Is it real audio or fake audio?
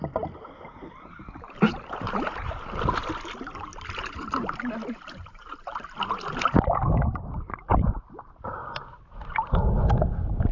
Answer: real